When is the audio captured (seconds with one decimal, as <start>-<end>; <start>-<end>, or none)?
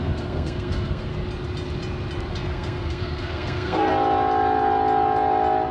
1.1-2.3; 3.9-5.7